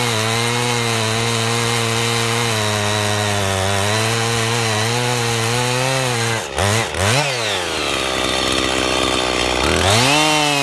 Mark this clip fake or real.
real